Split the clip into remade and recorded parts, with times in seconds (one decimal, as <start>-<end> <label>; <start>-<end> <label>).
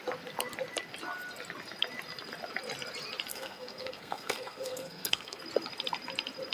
0.0-3.3 recorded; 3.3-5.4 remade; 5.4-6.5 recorded